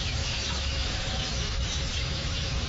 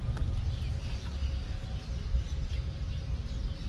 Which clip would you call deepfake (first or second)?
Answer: first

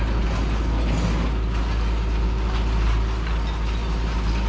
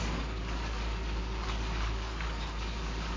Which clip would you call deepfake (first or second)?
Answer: second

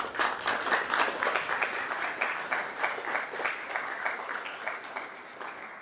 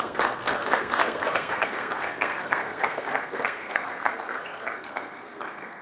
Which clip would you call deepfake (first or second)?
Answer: second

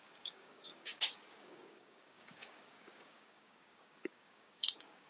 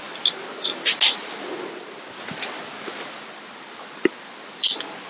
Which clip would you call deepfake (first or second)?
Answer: first